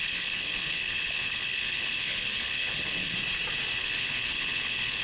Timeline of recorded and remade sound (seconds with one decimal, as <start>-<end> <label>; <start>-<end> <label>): 0.0-3.2 remade; 3.2-3.8 recorded; 3.8-5.0 remade